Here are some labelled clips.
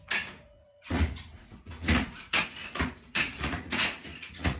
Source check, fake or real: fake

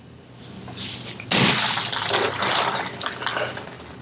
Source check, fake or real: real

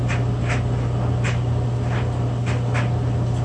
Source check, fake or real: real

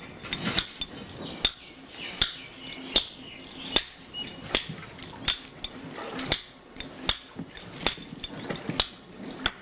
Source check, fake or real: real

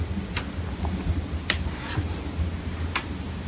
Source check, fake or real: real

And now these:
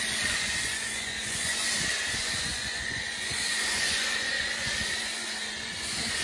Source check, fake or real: fake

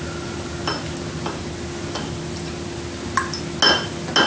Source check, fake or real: real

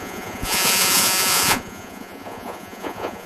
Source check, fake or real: fake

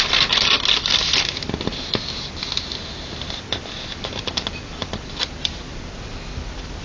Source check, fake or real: real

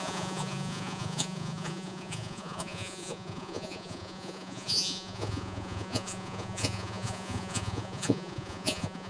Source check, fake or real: fake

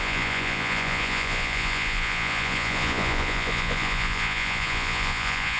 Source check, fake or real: fake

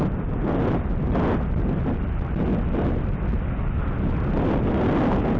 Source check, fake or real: real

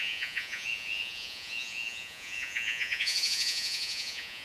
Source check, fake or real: fake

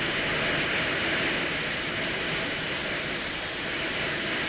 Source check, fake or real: real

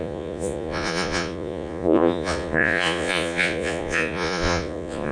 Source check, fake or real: fake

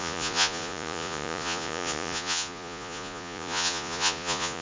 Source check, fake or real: fake